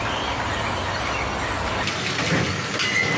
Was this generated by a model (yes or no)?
no